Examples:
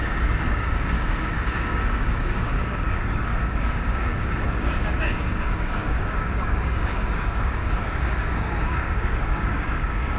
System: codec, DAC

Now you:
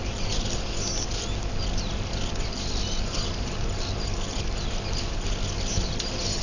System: none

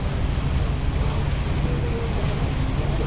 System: none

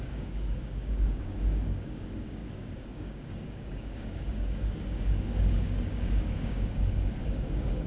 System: codec, DAC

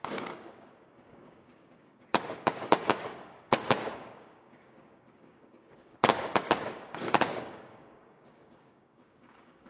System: codec, DAC